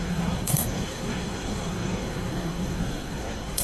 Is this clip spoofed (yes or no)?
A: yes